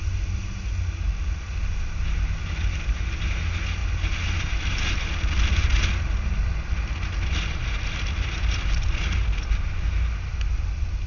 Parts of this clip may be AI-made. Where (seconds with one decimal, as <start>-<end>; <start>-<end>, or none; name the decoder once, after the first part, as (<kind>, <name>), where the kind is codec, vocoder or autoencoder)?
none